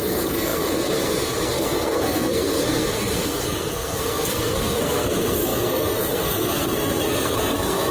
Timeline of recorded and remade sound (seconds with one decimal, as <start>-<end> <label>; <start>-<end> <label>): 0.0-7.9 remade

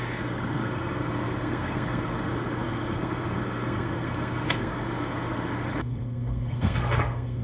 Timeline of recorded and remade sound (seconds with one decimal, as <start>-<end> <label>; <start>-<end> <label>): 0.0-7.4 remade

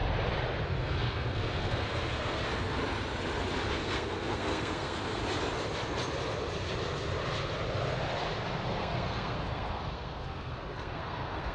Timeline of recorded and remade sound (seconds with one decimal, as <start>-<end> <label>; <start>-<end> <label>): 0.0-0.8 recorded; 0.8-2.8 remade; 2.8-3.7 recorded; 3.7-5.2 remade; 5.2-8.8 recorded; 8.8-11.5 remade

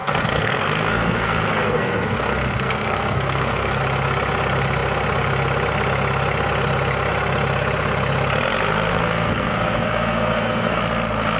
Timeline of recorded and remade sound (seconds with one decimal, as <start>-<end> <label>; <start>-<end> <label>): 0.0-3.8 remade; 3.8-8.9 recorded; 8.9-10.8 remade; 10.8-11.4 recorded

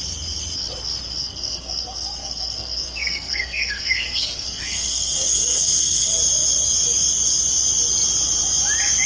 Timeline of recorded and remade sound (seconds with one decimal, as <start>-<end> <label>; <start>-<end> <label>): 0.0-1.2 recorded; 1.2-6.1 remade; 6.1-9.1 recorded

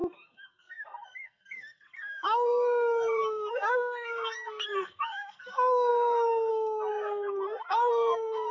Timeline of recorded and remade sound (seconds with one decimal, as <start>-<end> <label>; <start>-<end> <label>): 0.0-8.5 remade

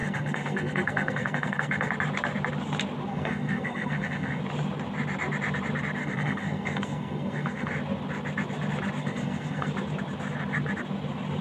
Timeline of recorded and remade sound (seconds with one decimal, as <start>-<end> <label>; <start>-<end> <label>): 0.0-1.9 remade; 1.9-3.1 recorded; 3.1-4.4 remade; 4.4-6.0 recorded; 6.0-7.7 remade; 7.7-9.0 recorded; 9.0-9.7 remade; 9.7-11.4 recorded